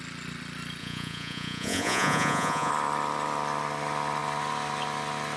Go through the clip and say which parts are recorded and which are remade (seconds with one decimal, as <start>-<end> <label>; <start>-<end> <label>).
0.0-0.8 recorded; 0.8-2.7 remade; 2.7-5.4 recorded